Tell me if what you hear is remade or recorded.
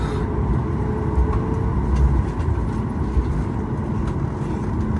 recorded